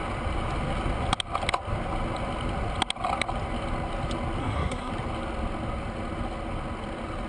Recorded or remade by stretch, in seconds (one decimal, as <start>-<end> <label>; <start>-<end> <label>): 0.0-4.4 recorded; 4.4-4.9 remade; 4.9-7.3 recorded